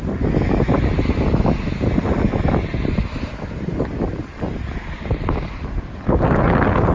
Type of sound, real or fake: real